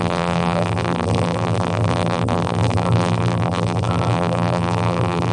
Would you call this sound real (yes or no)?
no